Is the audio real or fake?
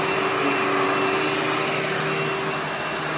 real